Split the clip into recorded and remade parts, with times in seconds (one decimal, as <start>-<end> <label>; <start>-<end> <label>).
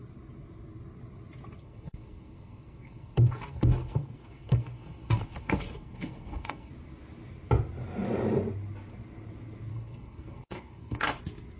0.0-1.6 recorded; 1.6-6.7 remade; 6.7-9.7 recorded; 9.7-11.2 remade; 11.2-11.6 recorded